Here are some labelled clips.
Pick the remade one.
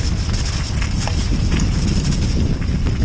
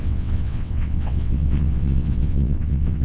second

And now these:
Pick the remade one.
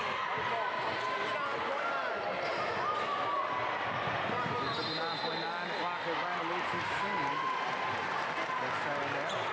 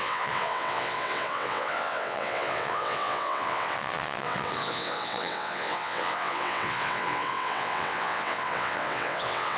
second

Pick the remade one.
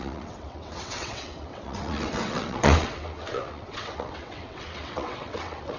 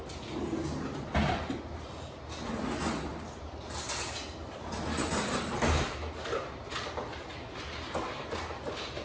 first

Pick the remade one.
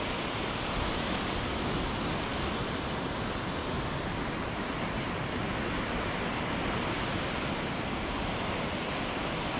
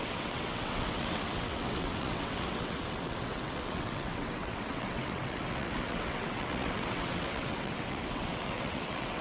second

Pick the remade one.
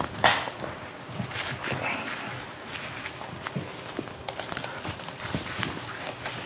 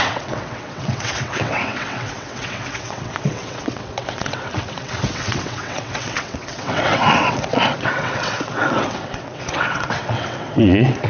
second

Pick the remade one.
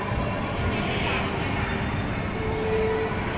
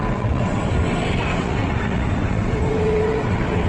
second